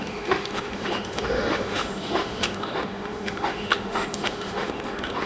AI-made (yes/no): yes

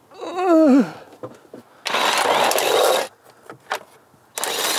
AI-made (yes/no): no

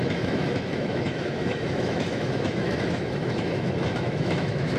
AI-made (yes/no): yes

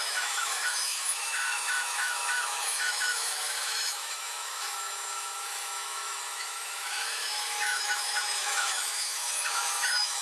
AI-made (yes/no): yes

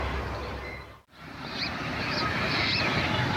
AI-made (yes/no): no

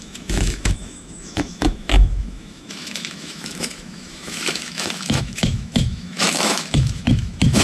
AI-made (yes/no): yes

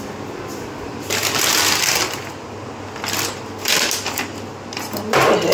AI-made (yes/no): no